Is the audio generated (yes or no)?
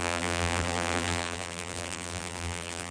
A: yes